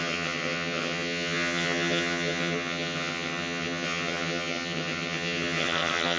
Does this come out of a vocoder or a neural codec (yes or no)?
yes